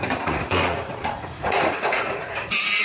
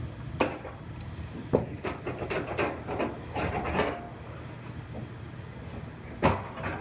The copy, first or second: first